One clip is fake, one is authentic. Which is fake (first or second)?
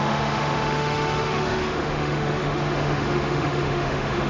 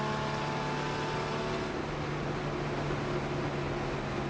first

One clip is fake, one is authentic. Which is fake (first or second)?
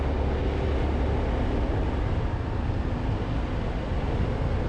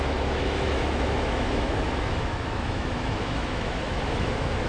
second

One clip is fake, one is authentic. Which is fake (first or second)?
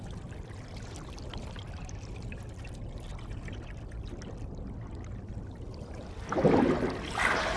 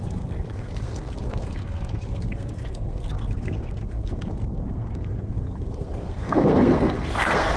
second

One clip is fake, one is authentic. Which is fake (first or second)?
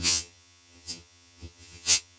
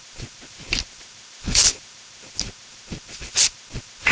first